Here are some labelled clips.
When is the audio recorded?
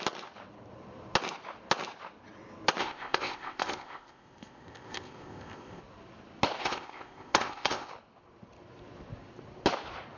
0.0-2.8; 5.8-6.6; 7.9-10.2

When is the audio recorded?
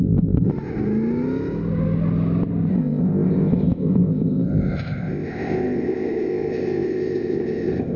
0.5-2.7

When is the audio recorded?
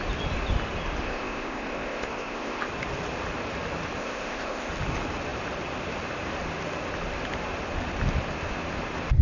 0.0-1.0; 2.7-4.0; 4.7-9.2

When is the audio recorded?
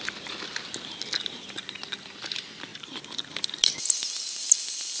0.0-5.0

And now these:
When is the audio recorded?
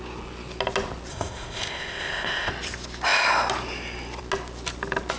0.0-1.1; 2.5-5.2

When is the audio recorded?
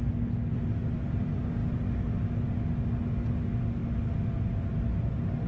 0.0-5.5